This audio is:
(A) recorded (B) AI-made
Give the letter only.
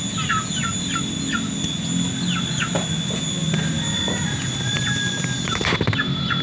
A